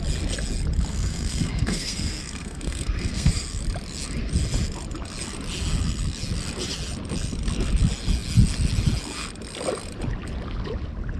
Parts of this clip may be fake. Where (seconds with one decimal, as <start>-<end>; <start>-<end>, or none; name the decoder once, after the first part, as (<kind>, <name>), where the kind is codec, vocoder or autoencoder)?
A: 0.9-3.3 (codec, SNAC)